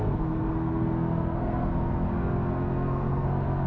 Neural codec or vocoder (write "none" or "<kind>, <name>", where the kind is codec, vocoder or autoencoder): codec, SNAC